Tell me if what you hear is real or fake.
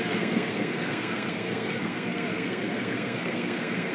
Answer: fake